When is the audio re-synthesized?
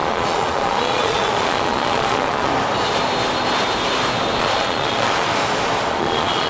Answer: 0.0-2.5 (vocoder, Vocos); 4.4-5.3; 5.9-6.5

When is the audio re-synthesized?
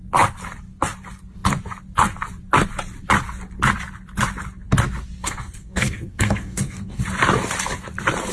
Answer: 5.2-7.0 (codec, SNAC)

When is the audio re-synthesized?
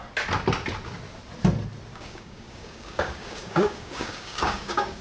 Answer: 1.9-5.0 (codec, DAC)